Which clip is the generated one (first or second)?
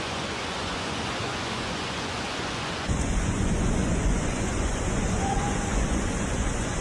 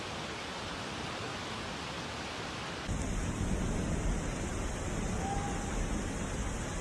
first